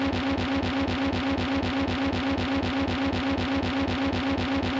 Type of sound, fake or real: real